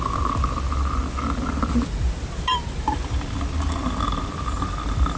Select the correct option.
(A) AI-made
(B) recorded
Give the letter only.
B